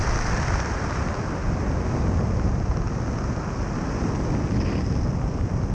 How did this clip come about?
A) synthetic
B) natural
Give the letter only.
B